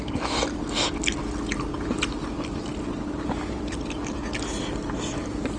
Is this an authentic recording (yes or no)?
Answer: yes